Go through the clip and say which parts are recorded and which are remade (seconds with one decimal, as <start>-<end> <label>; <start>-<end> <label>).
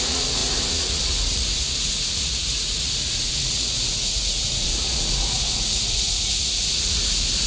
0.0-7.5 remade